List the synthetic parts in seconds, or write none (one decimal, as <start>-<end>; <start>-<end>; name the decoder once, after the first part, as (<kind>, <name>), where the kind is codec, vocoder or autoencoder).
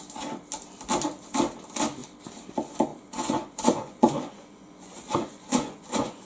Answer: 2.9-6.3 (vocoder, Vocos)